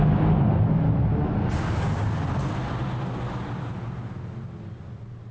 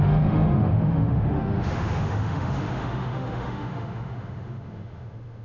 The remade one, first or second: second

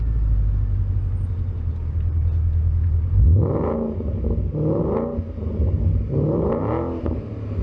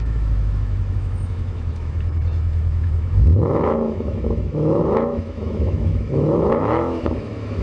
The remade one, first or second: second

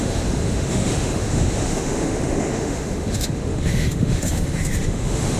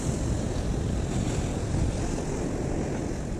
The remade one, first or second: first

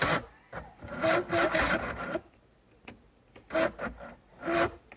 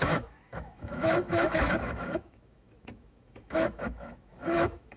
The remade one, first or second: second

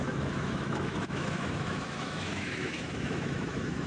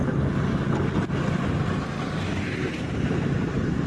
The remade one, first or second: first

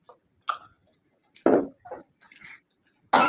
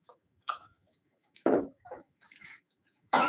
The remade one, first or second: second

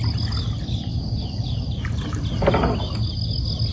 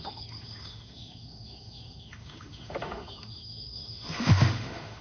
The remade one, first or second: second